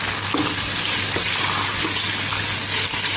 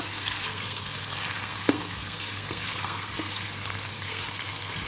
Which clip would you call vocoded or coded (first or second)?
second